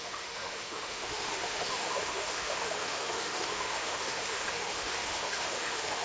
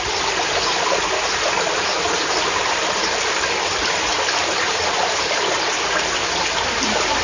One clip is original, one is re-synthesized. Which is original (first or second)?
second